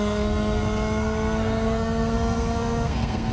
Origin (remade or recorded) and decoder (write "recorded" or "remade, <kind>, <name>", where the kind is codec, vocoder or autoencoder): remade, codec, SNAC